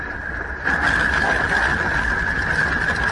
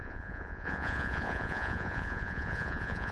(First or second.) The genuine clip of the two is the first